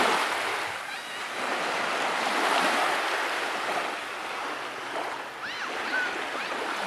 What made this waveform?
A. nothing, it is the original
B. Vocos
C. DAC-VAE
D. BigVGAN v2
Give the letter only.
A